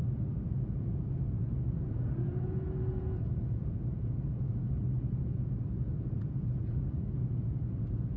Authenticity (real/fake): fake